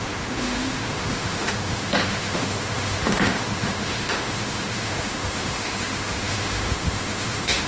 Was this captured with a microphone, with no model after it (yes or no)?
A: no